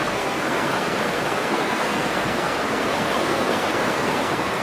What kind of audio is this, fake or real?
fake